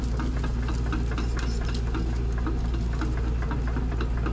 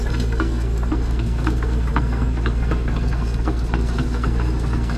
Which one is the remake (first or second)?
second